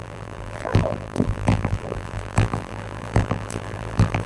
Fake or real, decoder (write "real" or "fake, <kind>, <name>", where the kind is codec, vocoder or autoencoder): fake, vocoder, BigVGAN v2